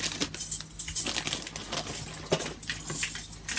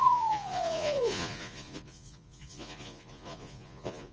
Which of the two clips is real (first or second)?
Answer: first